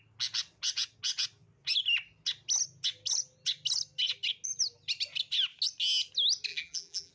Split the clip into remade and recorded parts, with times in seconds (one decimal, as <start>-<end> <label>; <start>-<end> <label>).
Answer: 0.0-6.5 recorded; 6.5-7.1 remade